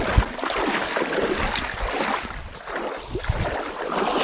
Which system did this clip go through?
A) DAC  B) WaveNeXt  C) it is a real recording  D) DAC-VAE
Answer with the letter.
C